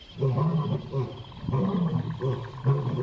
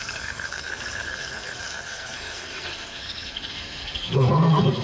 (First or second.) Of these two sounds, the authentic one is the first